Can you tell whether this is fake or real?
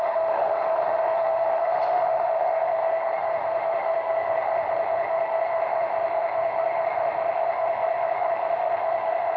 fake